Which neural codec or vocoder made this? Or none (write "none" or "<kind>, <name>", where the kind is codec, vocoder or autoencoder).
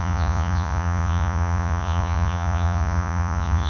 vocoder, Vocos